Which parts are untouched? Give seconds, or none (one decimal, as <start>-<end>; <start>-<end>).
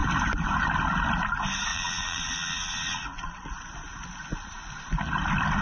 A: 0.0-1.7; 3.3-5.6